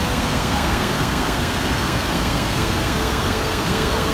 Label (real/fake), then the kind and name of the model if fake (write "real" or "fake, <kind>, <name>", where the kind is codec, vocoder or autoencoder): fake, codec, SNAC